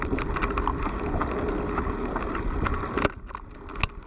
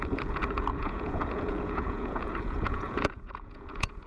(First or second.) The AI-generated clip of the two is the second